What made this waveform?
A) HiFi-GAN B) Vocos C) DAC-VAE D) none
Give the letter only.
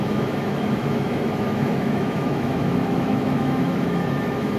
C